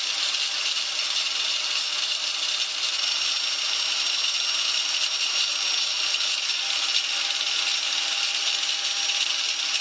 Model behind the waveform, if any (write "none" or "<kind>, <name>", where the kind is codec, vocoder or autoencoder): none